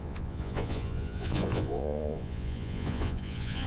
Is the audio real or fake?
fake